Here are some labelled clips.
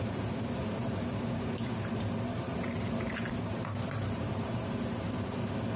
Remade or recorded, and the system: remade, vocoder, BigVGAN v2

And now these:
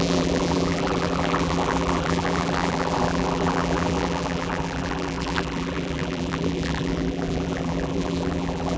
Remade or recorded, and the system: remade, vocoder, BigVGAN v2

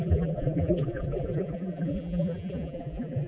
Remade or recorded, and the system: remade, vocoder, BigVGAN v2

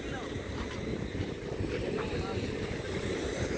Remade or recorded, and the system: remade, vocoder, BigVGAN v2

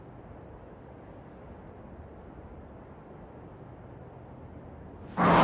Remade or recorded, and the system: recorded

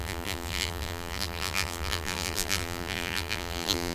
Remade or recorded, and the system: remade, vocoder, BigVGAN v2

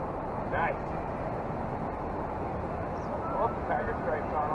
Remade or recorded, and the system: remade, vocoder, BigVGAN v2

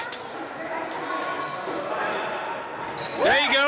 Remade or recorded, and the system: recorded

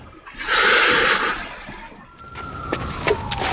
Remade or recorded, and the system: remade, vocoder, BigVGAN v2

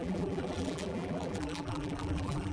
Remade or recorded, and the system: remade, vocoder, BigVGAN v2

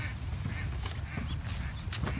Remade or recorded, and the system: recorded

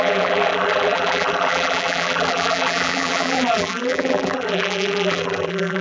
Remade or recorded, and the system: remade, vocoder, BigVGAN v2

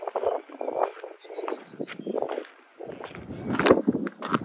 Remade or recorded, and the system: recorded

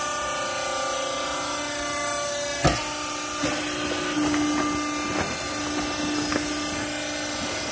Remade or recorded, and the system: recorded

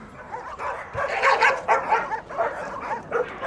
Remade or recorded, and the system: remade, vocoder, BigVGAN v2